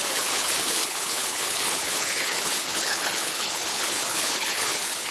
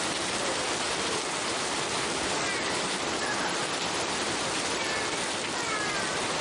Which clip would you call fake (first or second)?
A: first